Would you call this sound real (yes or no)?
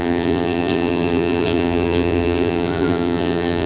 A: no